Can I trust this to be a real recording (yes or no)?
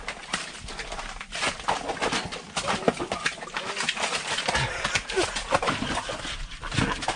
yes